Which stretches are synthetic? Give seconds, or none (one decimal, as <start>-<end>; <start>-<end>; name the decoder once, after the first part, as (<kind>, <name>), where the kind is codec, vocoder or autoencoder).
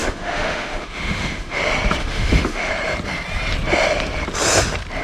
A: 0.0-1.6 (autoencoder, DAC-VAE); 2.0-2.7